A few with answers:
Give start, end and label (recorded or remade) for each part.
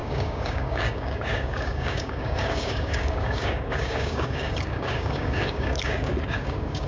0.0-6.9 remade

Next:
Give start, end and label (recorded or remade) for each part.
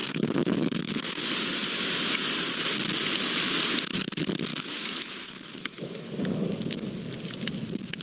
0.0-1.2 remade; 1.2-4.5 recorded; 4.5-6.6 remade; 6.6-8.0 recorded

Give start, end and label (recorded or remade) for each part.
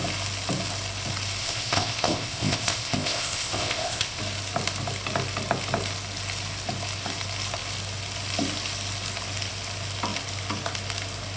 0.0-1.4 recorded; 1.4-4.2 remade; 4.2-11.4 recorded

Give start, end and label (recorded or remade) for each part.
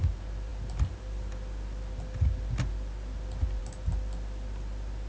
0.0-5.1 recorded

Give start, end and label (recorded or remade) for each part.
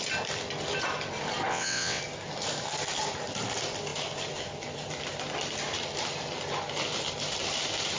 0.0-1.5 recorded; 1.5-2.0 remade; 2.0-8.0 recorded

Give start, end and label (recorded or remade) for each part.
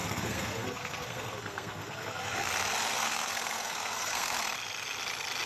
0.0-2.5 remade; 2.5-2.9 recorded; 2.9-4.4 remade; 4.4-5.5 recorded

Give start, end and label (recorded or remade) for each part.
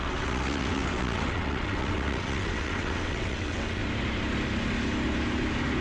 0.0-3.8 remade; 3.8-5.8 recorded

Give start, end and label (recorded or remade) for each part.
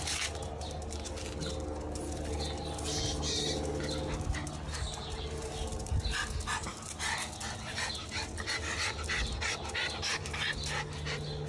0.0-11.5 recorded